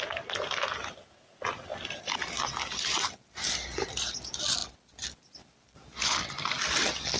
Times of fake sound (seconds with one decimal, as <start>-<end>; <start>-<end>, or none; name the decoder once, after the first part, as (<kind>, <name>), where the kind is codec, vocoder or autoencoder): none